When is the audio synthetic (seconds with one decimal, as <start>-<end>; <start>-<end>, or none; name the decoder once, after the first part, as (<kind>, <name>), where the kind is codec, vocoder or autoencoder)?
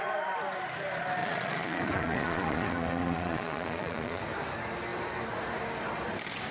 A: 1.2-4.2 (vocoder, Vocos)